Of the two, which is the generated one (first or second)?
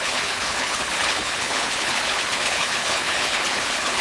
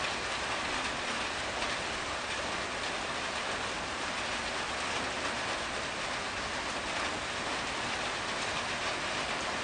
first